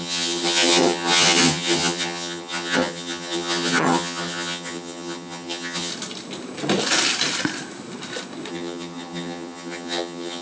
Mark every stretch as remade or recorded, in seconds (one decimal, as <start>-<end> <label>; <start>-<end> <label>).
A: 0.0-5.9 remade; 5.9-8.5 recorded; 8.5-10.4 remade